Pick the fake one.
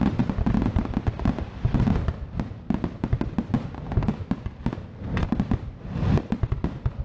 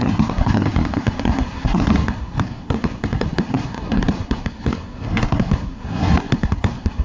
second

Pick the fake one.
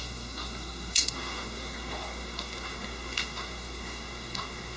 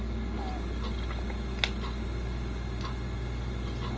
first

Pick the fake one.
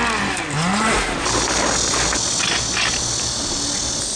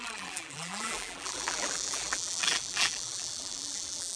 second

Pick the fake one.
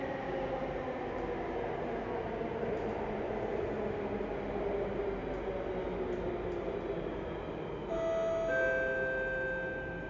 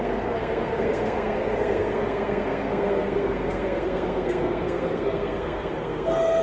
second